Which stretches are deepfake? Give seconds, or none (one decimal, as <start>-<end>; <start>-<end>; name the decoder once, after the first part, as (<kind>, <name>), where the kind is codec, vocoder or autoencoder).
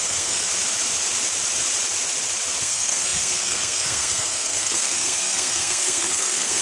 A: 0.0-0.5 (codec, SNAC); 2.6-6.6